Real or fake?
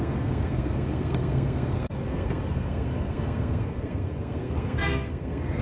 fake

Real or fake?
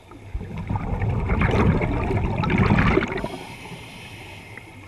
real